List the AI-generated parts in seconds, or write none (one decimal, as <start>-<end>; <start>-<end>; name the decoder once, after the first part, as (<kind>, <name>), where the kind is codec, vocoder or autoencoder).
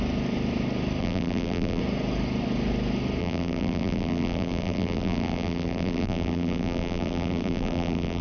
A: 1.0-1.8 (vocoder, BigVGAN v2); 3.2-8.2